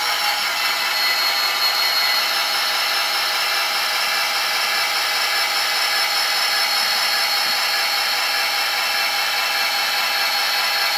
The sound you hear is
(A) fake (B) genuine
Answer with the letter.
B